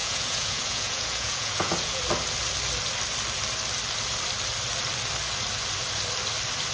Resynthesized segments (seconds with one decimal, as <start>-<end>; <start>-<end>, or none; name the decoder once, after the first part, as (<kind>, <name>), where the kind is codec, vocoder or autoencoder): 0.0-2.0 (vocoder, Vocos)